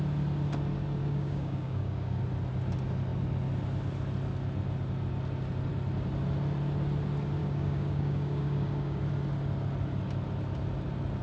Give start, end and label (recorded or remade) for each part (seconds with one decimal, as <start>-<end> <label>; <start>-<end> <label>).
0.0-1.0 recorded; 1.0-2.2 remade; 2.2-7.4 recorded; 7.4-9.0 remade; 9.0-11.2 recorded